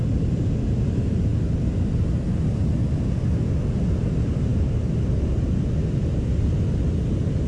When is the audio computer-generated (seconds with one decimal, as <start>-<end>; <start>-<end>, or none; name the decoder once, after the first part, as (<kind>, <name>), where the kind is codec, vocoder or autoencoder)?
none